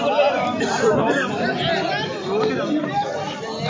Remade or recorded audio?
recorded